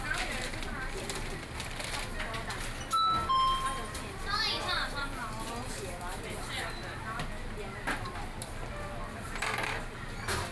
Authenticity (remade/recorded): recorded